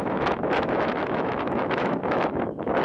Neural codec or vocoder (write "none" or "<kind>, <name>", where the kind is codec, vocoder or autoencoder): autoencoder, DAC-VAE